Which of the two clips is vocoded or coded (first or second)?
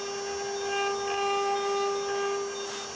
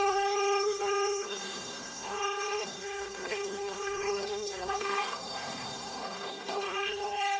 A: second